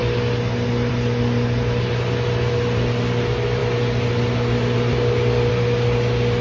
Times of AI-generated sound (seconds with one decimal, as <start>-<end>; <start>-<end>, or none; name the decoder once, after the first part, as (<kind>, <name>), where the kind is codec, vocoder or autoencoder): none